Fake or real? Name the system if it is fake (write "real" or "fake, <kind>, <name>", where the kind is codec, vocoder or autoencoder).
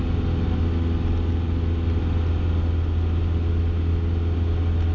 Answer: real